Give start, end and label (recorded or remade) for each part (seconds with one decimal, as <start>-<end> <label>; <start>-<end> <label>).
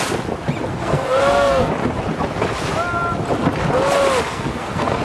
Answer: 0.0-0.7 recorded; 0.7-1.7 remade; 1.7-4.3 recorded; 4.3-5.0 remade